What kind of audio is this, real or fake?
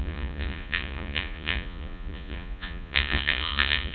fake